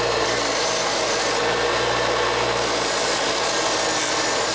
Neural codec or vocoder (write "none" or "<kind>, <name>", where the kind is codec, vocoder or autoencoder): none